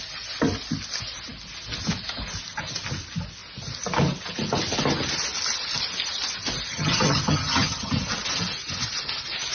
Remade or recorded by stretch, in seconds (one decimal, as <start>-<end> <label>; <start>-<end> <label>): 0.0-6.7 recorded; 6.7-7.9 remade; 7.9-9.5 recorded